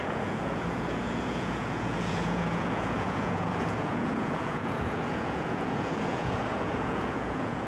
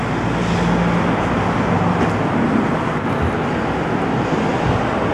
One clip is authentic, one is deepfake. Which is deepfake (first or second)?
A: first